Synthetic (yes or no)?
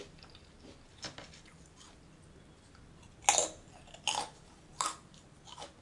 no